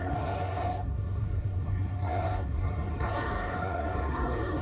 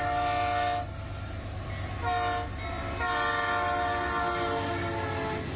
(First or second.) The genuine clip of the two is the second